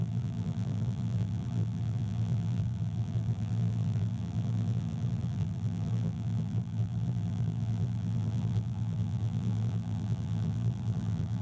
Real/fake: fake